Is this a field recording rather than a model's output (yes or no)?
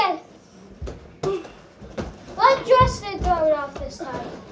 yes